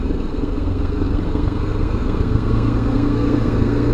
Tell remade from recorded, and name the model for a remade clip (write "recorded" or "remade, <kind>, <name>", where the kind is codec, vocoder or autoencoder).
remade, codec, SNAC